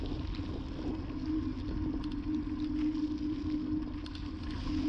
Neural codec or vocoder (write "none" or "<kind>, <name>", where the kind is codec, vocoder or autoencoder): none